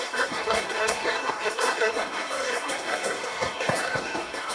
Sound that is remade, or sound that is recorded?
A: remade